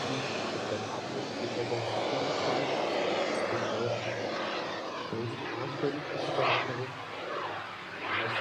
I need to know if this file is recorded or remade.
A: recorded